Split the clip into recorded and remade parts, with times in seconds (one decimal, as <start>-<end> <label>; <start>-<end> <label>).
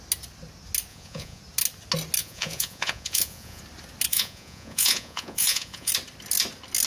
0.0-0.9 recorded; 0.9-1.4 remade; 1.4-2.2 recorded; 2.2-3.6 remade; 3.6-4.1 recorded; 4.1-5.9 remade; 5.9-6.9 recorded